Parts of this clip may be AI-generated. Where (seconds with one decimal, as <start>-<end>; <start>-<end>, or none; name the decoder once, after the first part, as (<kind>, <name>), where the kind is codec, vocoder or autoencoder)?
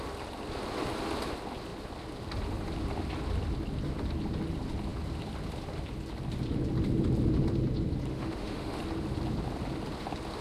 8.1-8.8 (autoencoder, DAC-VAE)